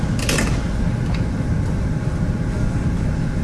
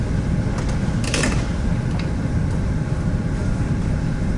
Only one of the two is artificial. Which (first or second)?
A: second